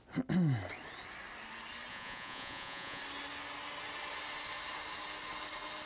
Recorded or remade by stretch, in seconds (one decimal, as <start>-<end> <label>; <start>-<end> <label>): 0.0-1.9 recorded; 1.9-3.0 remade; 3.0-5.9 recorded